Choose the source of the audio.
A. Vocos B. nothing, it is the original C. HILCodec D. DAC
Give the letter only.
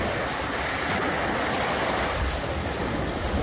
B